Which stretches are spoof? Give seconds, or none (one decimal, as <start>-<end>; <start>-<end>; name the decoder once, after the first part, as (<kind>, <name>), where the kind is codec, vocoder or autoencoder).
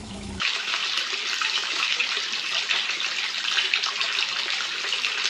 0.0-0.8 (autoencoder, DAC-VAE); 1.5-2.0